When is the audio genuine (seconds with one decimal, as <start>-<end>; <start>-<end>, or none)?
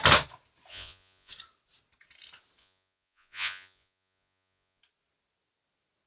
0.0-0.7; 1.3-2.6; 4.8-6.1